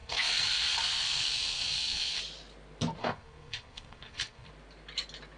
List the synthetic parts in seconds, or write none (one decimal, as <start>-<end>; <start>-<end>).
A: 0.0-2.2; 3.0-4.5